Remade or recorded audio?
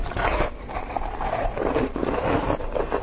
remade